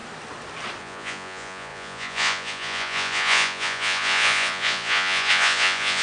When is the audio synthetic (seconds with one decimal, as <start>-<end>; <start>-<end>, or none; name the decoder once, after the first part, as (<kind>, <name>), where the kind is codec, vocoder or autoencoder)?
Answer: 0.8-6.0 (vocoder, Vocos)